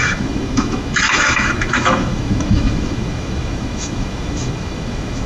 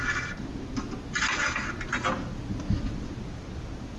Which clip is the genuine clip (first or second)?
second